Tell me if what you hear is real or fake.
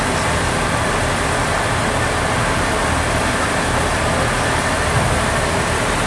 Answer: real